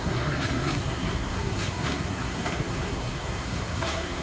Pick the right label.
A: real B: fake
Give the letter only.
B